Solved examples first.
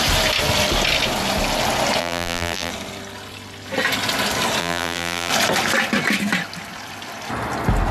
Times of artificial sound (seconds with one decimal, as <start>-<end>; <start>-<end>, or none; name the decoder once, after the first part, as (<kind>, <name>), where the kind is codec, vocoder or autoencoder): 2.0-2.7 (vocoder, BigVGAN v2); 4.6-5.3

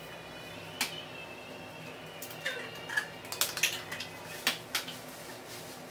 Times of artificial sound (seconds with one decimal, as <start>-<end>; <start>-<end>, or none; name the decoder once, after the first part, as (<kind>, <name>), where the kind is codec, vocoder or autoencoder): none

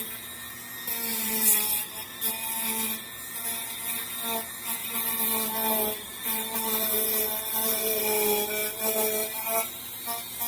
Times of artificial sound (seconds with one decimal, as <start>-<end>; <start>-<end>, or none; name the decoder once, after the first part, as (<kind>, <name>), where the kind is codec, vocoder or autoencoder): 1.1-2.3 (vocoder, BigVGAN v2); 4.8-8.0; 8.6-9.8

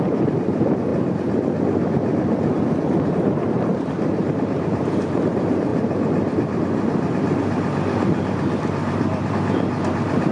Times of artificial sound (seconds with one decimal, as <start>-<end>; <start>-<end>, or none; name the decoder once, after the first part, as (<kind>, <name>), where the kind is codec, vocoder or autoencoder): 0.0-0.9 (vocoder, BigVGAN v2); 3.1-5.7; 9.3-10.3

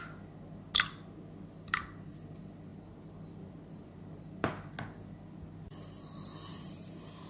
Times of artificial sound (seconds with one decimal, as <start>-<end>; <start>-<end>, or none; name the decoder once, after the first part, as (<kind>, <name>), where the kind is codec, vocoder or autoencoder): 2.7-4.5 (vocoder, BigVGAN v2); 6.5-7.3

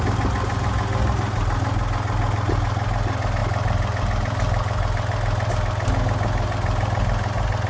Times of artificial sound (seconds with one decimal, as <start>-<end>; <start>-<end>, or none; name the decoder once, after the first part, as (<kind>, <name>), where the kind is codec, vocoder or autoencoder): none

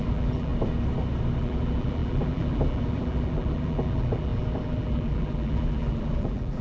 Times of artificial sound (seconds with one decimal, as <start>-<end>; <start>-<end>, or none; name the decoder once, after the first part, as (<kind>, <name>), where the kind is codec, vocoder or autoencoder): 0.0-0.5 (vocoder, BigVGAN v2); 1.4-6.6

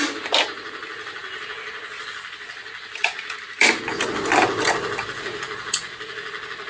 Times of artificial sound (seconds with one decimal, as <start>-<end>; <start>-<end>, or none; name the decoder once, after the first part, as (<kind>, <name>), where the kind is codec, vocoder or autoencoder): none